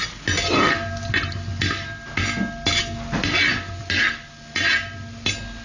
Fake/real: real